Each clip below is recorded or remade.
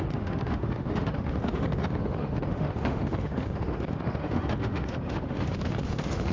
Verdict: remade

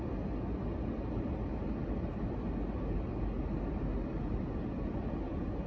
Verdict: recorded